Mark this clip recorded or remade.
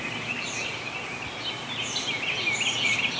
recorded